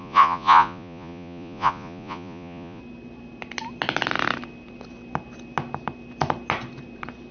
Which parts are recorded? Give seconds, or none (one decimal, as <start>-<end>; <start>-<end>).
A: 2.8-7.3